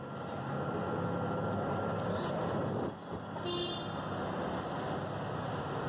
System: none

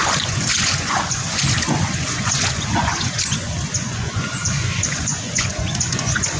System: vocoder, Vocos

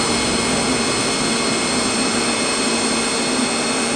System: none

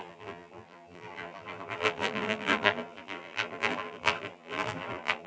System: vocoder, BigVGAN v2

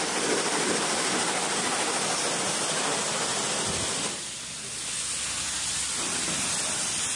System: none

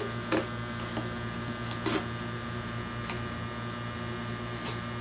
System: none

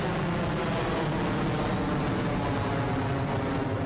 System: none